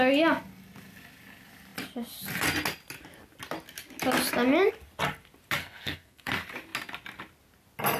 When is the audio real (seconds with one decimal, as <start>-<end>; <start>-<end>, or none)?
0.0-5.6; 6.3-8.0